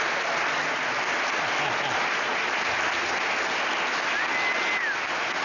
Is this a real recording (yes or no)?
yes